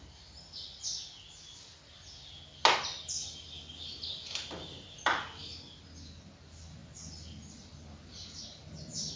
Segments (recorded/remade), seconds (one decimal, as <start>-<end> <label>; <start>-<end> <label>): 0.0-9.2 recorded